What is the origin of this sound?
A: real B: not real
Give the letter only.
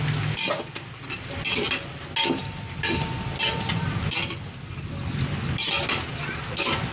A